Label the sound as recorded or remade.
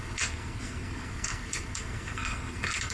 remade